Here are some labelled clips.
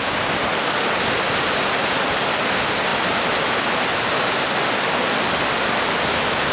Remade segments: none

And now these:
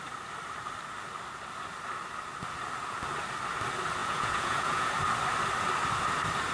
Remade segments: 4.0-4.9 (vocoder, Vocos)

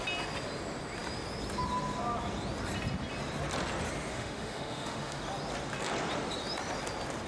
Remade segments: 4.1-5.2 (autoencoder, DAC-VAE)

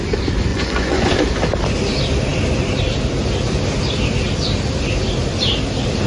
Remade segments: 0.5-1.1 (vocoder, Vocos)

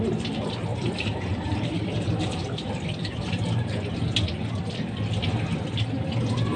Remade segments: 0.7-3.7 (vocoder, BigVGAN v2)

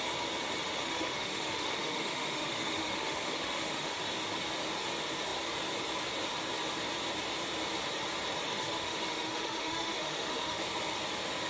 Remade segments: 0.8-4.0 (autoencoder, DAC-VAE); 8.5-10.6

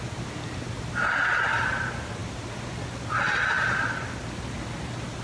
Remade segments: none

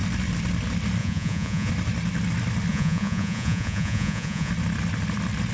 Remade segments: 1.0-1.7 (vocoder, Vocos); 2.7-4.5